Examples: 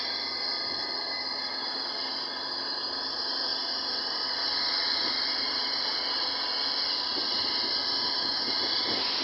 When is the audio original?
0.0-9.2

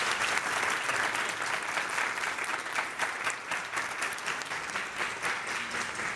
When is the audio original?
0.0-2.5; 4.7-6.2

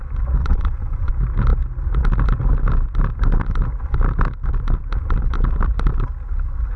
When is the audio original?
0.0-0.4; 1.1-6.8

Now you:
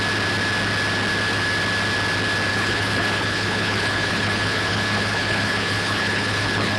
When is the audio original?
0.0-2.5

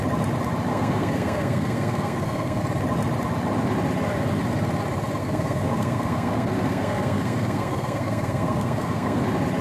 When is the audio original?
0.0-0.7; 2.6-5.2; 9.2-9.6